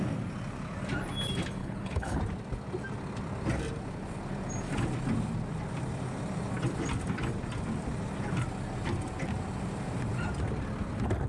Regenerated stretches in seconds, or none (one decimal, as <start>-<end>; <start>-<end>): 1.6-2.2